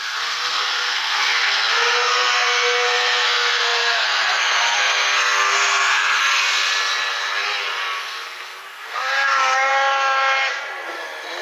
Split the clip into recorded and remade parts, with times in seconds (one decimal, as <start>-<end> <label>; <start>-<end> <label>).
0.0-6.2 remade; 6.2-8.0 recorded; 8.0-9.7 remade; 9.7-11.4 recorded

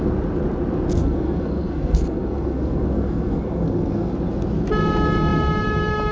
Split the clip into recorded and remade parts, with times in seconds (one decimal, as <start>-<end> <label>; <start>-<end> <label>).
0.0-1.0 recorded; 1.0-4.1 remade; 4.1-6.1 recorded

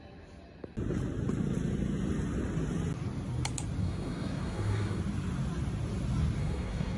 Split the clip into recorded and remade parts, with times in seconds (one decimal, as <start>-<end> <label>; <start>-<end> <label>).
0.0-3.8 recorded; 3.8-5.0 remade; 5.0-6.4 recorded; 6.4-7.0 remade

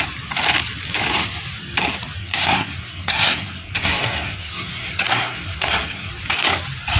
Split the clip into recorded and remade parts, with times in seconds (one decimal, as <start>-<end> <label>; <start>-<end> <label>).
0.0-2.2 recorded; 2.2-6.1 remade; 6.1-7.0 recorded

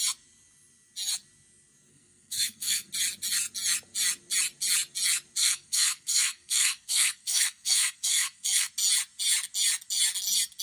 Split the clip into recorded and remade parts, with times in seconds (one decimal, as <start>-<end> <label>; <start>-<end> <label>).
0.0-1.9 recorded; 1.9-2.9 remade; 2.9-5.4 recorded; 5.4-8.7 remade; 8.7-10.6 recorded

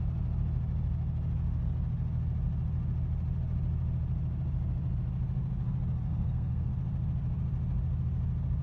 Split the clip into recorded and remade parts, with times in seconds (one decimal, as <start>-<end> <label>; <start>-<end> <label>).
0.0-6.1 recorded; 6.1-6.7 remade; 6.7-8.6 recorded

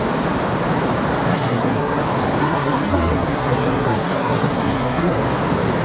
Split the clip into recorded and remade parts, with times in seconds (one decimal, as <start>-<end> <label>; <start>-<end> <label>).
0.0-1.3 recorded; 1.3-2.0 remade; 2.0-2.4 recorded; 2.4-5.2 remade; 5.2-5.8 recorded